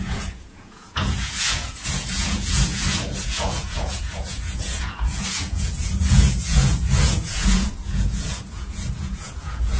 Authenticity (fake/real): fake